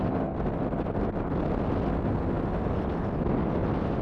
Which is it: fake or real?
real